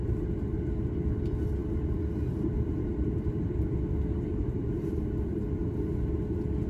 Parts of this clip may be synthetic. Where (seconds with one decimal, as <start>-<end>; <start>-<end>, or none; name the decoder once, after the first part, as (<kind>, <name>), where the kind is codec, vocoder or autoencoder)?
1.6-3.4 (vocoder, BigVGAN v2); 4.4-5.4